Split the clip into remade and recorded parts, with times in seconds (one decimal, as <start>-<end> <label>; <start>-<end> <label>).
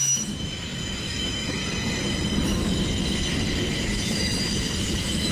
0.0-1.6 remade; 1.6-4.8 recorded; 4.8-5.3 remade